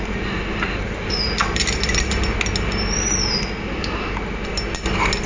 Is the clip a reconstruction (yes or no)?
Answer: no